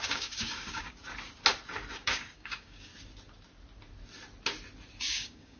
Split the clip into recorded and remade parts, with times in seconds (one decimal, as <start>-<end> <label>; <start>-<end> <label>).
0.0-1.0 remade; 1.0-1.9 recorded; 1.9-2.9 remade; 2.9-5.0 recorded; 5.0-5.6 remade